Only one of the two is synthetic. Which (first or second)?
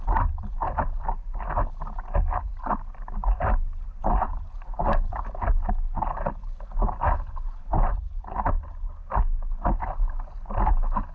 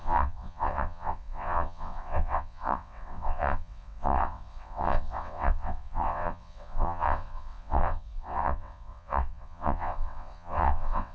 second